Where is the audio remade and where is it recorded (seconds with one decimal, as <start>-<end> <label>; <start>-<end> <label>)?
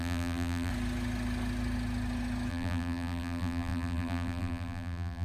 0.0-0.7 remade; 0.7-2.5 recorded; 2.5-5.2 remade